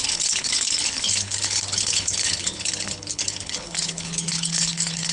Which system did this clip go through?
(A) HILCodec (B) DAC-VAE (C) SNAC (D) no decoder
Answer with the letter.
A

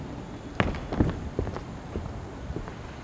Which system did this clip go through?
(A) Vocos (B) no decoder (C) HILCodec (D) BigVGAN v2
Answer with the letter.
B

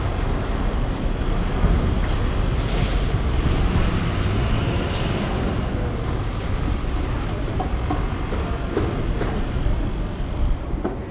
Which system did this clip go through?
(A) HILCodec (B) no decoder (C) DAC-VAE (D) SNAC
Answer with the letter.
B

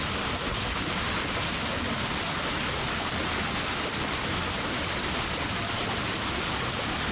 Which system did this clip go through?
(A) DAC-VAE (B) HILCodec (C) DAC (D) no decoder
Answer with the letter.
D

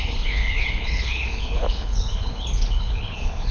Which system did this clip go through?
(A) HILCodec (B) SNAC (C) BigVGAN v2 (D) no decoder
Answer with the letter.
A